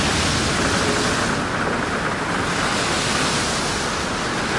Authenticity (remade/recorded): recorded